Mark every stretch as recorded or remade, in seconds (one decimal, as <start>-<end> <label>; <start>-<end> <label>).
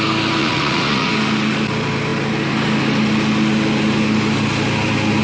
0.0-0.4 recorded; 0.4-1.1 remade; 1.1-5.2 recorded